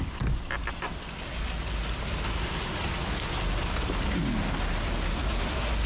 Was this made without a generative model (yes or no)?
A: yes